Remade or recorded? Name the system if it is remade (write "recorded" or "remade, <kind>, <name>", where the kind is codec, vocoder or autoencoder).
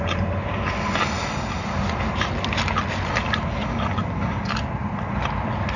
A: recorded